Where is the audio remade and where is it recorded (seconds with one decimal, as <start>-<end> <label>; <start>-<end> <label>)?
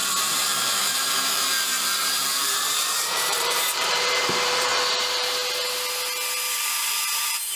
0.0-4.7 remade; 4.7-6.5 recorded; 6.5-7.6 remade